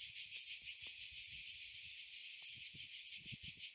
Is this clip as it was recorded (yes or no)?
yes